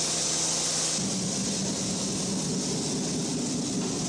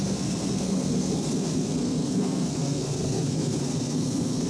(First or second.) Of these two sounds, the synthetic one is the second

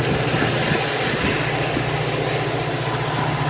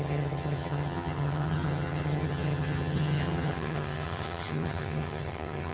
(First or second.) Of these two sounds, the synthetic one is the second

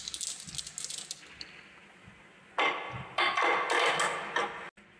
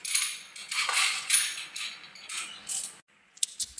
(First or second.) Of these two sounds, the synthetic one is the second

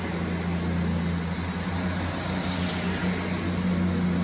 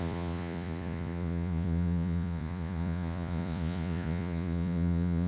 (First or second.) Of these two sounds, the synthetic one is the second